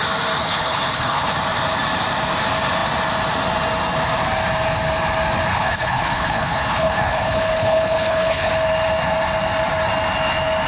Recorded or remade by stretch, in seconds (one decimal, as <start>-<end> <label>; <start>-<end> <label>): 0.0-0.4 recorded; 0.4-1.3 remade; 1.3-5.5 recorded; 5.5-8.5 remade; 8.5-10.7 recorded